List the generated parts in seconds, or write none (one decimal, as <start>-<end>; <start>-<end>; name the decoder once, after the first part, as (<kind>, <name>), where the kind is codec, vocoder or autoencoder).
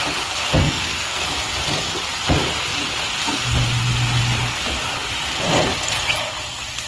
0.6-1.3 (codec, SNAC)